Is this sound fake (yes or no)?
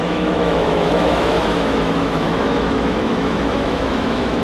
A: yes